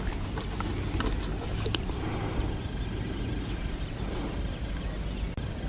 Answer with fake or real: real